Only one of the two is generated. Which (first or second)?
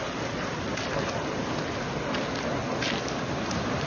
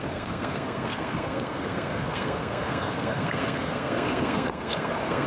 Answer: second